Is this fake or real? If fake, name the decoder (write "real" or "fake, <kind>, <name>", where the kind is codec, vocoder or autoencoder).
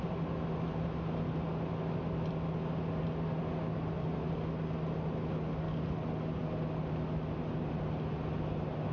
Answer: real